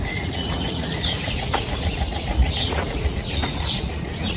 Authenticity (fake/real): fake